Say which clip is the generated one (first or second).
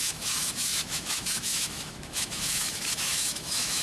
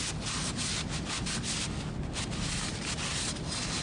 first